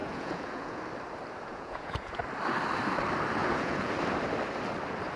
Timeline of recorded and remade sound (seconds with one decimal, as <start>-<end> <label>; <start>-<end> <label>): 0.0-0.8 remade; 0.8-1.5 recorded; 1.5-2.2 remade; 2.2-3.4 recorded; 3.4-3.9 remade; 3.9-5.2 recorded